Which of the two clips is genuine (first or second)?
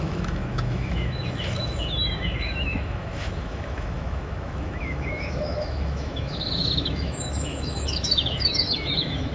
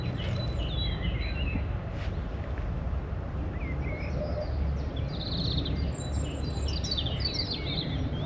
second